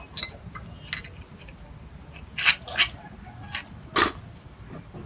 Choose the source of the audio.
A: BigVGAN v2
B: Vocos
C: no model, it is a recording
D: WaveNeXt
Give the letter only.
C